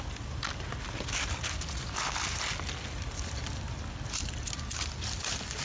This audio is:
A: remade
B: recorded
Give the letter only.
B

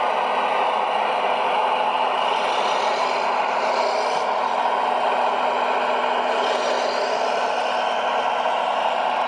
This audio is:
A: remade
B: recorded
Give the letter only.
B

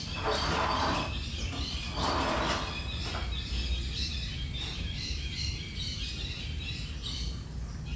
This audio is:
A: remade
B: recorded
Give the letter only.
B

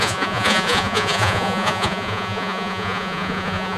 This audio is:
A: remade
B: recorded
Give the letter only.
A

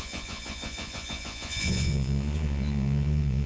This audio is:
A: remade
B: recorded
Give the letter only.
A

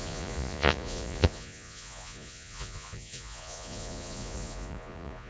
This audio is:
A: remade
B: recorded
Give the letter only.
A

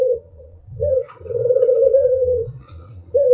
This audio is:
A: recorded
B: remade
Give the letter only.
B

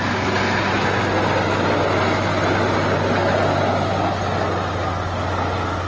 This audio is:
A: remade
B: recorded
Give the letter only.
B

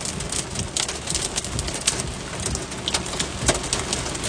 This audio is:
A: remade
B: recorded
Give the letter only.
B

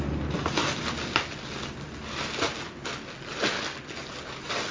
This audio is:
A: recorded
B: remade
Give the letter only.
A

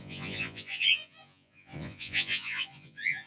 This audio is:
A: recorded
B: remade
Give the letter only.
B